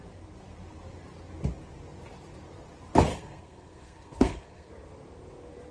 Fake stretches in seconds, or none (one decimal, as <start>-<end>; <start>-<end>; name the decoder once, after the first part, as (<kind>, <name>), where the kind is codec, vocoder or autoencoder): 3.1-4.7 (codec, SNAC)